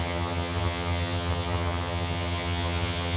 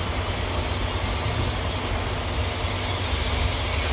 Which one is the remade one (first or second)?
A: first